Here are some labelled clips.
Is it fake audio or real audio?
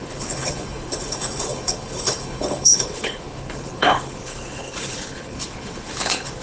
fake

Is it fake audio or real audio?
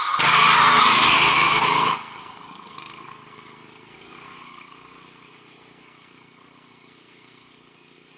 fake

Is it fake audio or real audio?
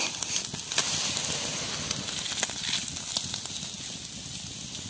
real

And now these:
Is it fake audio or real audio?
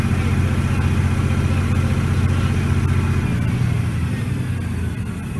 real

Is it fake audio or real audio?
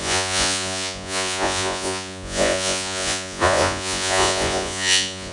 fake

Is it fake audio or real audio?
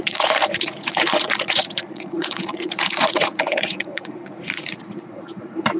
fake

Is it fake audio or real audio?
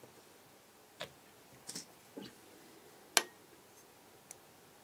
real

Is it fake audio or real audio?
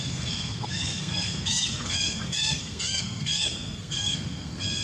fake